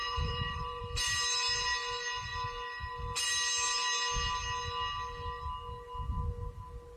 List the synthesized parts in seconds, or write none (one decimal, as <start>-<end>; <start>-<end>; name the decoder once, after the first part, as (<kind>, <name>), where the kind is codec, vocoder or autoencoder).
0.0-0.8 (vocoder, BigVGAN v2)